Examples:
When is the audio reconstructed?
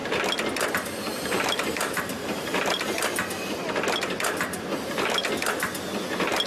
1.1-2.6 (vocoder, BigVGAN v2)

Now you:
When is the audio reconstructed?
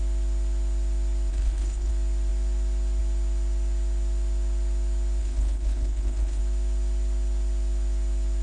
1.3-1.9 (codec, HILCodec); 5.2-6.4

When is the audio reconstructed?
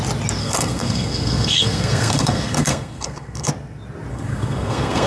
0.4-3.5 (codec, SNAC); 4.1-5.1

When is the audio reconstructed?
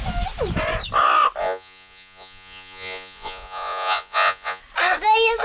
1.4-4.6 (vocoder, Vocos)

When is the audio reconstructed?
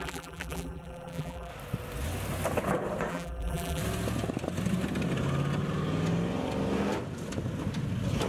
0.0-1.5 (vocoder, BigVGAN v2); 3.1-3.8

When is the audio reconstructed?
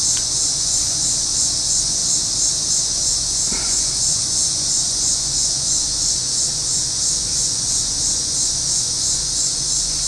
0.0-2.0 (vocoder, Vocos); 2.7-10.1